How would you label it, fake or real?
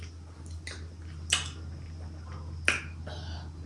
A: real